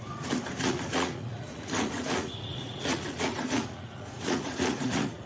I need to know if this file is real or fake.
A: fake